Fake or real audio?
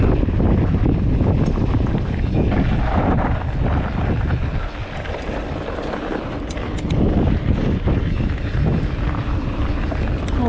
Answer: real